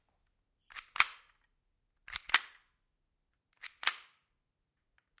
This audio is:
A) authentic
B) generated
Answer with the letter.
A